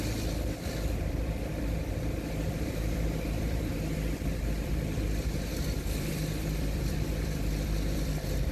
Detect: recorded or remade remade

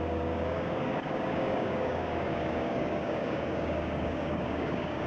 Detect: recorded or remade remade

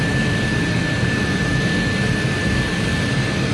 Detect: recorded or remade recorded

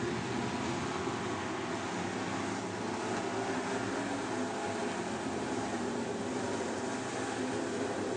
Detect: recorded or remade recorded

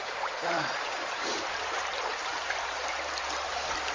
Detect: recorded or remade remade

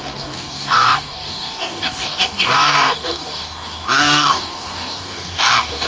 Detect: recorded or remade remade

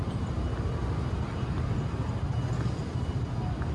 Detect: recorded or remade recorded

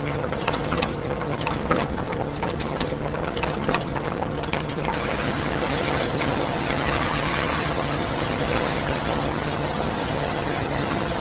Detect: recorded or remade remade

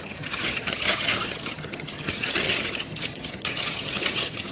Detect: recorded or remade remade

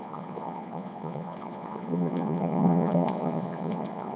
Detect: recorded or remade remade